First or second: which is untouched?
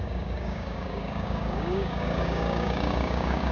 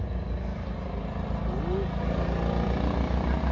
second